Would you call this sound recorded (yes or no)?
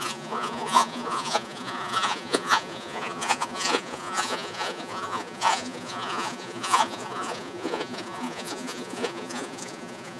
no